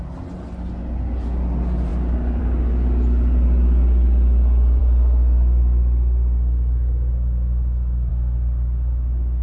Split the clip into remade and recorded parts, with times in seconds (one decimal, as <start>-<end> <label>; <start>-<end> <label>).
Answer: 0.0-9.4 recorded